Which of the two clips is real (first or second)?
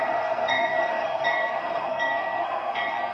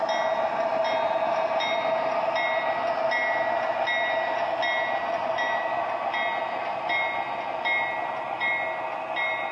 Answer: second